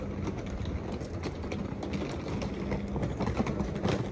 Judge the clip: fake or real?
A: real